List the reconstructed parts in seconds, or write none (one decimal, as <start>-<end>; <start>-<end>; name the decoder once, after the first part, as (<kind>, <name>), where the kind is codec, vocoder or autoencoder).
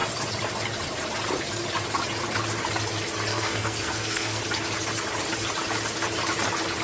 3.3-4.4 (codec, SNAC)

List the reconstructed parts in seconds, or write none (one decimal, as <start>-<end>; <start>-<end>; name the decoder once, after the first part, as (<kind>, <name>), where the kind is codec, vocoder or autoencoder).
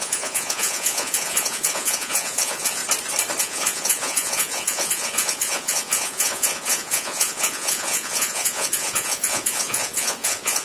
0.0-2.8 (vocoder, Vocos); 3.4-10.6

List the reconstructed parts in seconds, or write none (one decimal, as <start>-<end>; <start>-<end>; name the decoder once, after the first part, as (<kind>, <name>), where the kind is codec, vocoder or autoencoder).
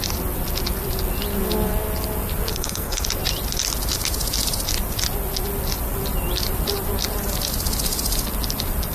2.5-3.0 (codec, SNAC)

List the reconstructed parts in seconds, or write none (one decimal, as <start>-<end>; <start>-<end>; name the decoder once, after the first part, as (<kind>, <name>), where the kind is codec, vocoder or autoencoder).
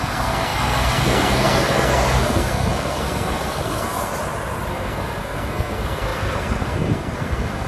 0.0-4.1 (codec, SNAC); 4.7-7.7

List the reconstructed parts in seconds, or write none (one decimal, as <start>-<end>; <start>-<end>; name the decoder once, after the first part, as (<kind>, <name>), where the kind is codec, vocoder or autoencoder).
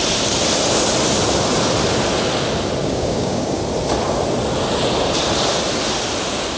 2.8-3.6 (codec, DAC)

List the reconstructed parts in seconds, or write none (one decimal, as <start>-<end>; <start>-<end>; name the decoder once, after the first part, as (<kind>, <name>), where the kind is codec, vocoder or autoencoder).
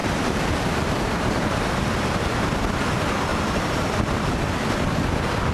0.0-1.8 (vocoder, BigVGAN v2); 3.3-4.3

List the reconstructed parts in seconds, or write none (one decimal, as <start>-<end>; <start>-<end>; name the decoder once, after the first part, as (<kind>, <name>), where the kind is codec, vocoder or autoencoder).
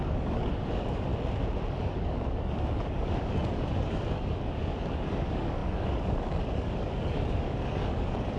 0.0-1.1 (codec, DAC); 1.7-8.4